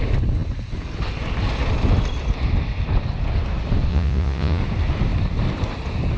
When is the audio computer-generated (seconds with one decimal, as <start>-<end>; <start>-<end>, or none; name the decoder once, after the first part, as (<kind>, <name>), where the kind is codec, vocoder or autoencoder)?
3.9-4.6 (vocoder, Vocos)